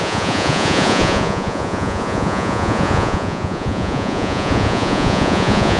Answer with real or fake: fake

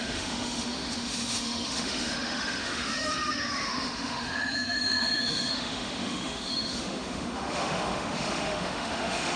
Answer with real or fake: fake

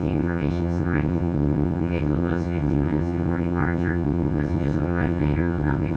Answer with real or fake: fake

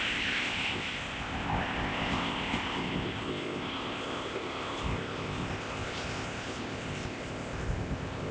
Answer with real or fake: fake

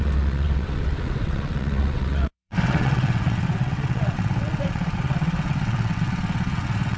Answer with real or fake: fake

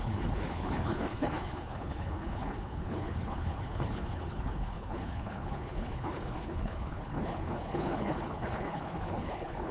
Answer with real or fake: fake